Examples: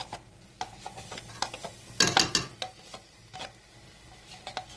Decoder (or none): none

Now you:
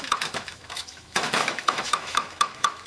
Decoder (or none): autoencoder, DAC-VAE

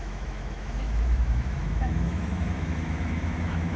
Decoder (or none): autoencoder, DAC-VAE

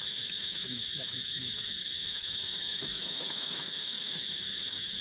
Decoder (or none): autoencoder, DAC-VAE